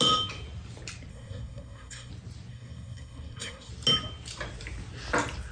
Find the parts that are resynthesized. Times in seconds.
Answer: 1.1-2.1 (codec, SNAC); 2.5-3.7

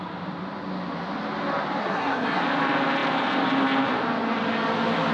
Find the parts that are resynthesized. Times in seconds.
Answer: 1.8-2.4 (codec, SNAC)